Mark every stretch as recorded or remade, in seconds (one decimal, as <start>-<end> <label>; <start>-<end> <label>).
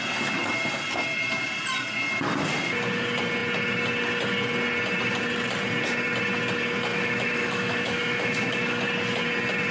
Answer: 0.0-6.9 recorded; 6.9-8.8 remade; 8.8-9.7 recorded